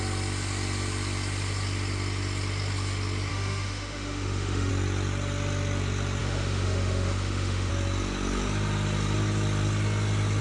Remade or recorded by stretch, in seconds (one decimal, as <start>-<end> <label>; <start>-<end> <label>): 0.0-3.3 recorded; 3.3-4.7 remade; 4.7-6.2 recorded; 6.2-7.7 remade; 7.7-10.4 recorded